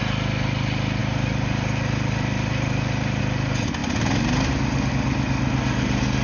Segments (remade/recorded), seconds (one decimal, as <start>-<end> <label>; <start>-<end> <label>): 0.0-1.0 recorded; 1.0-3.2 remade; 3.2-6.2 recorded